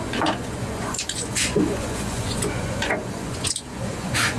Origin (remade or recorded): remade